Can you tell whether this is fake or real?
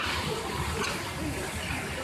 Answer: real